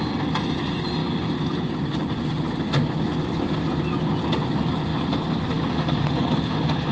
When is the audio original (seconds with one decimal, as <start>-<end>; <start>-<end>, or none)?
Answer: 0.0-6.9